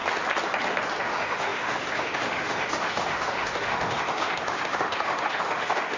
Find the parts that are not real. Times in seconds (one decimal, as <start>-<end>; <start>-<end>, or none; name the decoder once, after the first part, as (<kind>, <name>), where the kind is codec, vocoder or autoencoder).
1.0-6.0 (autoencoder, DAC-VAE)